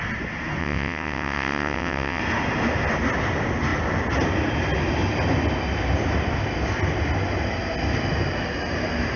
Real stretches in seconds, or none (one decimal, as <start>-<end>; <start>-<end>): 0.0-0.6; 2.2-9.2